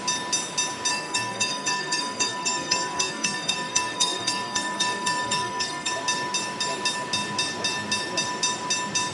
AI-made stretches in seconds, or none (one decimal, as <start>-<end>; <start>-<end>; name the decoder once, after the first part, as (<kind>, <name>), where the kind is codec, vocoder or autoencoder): 0.9-5.9 (codec, SNAC)